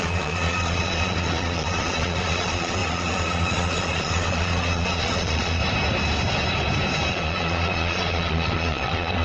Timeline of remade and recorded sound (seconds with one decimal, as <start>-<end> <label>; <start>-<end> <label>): 0.0-5.6 remade; 5.6-7.1 recorded; 7.1-9.2 remade